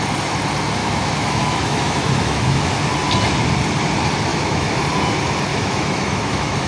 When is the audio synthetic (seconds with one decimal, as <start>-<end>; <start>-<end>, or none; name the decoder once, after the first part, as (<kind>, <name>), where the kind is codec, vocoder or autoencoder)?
0.8-2.7 (autoencoder, DAC-VAE); 4.3-4.8; 5.5-6.7